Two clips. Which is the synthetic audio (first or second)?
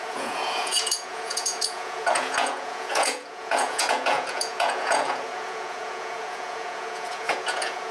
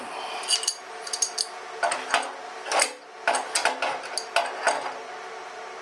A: first